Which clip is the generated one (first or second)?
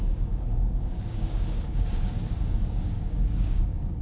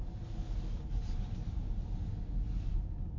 first